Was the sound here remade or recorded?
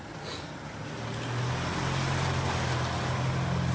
recorded